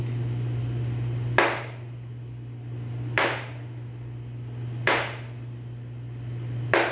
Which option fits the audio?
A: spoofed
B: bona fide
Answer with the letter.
B